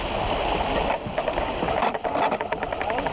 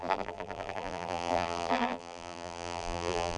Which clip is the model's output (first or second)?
second